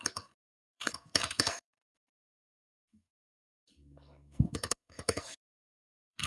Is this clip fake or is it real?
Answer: fake